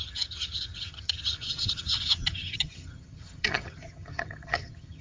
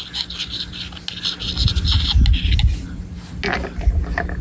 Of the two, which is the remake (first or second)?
first